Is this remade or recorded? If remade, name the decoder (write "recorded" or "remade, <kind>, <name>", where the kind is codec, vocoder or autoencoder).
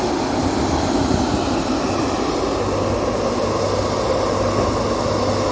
recorded